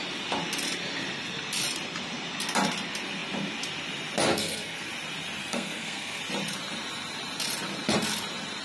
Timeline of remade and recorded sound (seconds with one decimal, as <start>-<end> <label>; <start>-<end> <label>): 0.0-4.3 recorded; 4.3-4.9 remade; 4.9-5.4 recorded; 5.4-6.2 remade; 6.2-8.6 recorded